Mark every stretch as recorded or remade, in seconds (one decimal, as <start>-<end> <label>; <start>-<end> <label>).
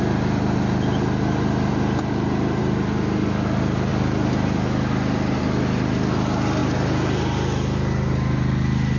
0.0-9.0 recorded